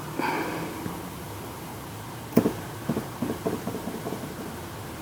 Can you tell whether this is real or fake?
fake